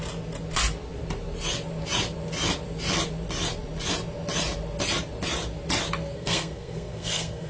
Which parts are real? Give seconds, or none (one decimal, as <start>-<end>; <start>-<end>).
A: 0.0-6.1